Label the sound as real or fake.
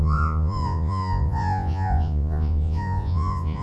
fake